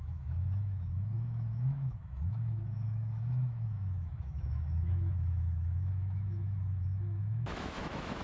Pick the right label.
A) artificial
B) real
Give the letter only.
A